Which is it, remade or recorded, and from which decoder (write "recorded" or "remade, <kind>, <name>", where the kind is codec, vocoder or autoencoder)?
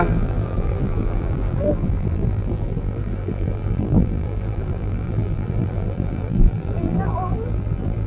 remade, vocoder, BigVGAN v2